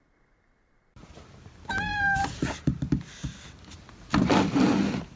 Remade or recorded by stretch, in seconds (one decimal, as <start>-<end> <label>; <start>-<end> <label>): 0.0-5.2 recorded